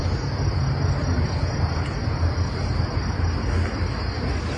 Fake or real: real